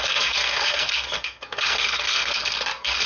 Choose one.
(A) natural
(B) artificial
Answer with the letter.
B